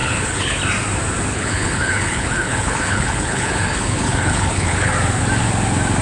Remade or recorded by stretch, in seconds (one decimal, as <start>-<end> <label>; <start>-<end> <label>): 0.0-0.6 remade; 0.6-1.3 recorded; 1.3-4.9 remade; 4.9-6.0 recorded